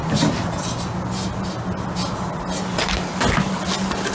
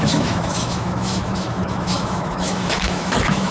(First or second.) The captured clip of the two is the first